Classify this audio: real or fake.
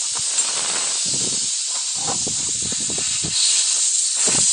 real